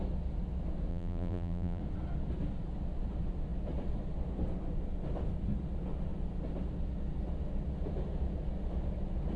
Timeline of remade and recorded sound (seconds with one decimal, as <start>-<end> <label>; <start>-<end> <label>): 0.0-0.9 recorded; 0.9-1.8 remade; 1.8-9.4 recorded